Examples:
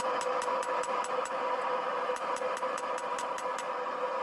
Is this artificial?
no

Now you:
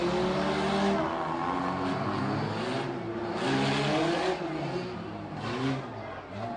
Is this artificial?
no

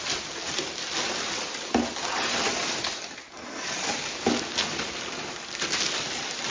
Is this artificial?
no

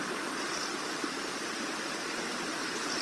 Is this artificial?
yes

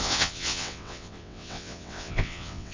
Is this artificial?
yes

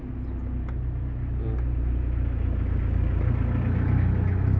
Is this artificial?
no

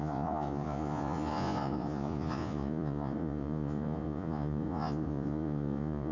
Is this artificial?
yes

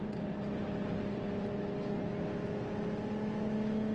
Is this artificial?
no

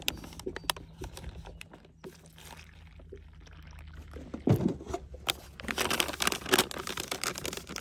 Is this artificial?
no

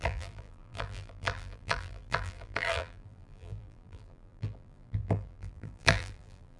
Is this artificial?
yes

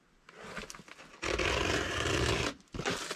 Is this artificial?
no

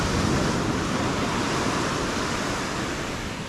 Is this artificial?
no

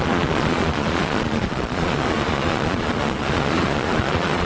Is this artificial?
yes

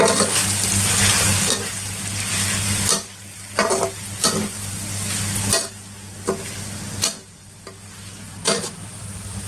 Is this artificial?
no